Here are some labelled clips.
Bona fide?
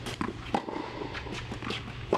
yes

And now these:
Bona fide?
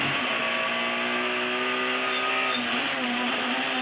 yes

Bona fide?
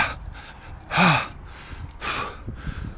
yes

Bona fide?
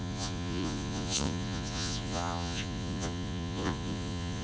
no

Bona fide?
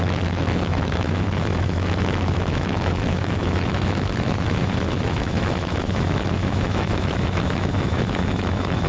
no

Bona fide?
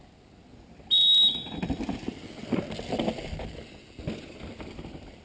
yes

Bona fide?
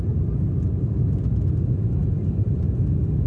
yes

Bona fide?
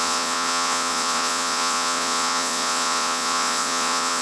no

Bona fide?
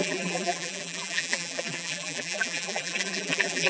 no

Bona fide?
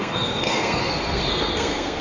no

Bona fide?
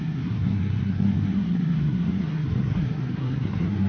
no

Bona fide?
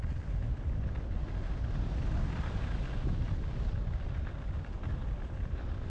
yes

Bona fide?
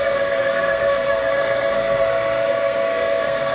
no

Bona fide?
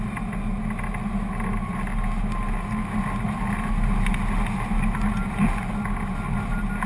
yes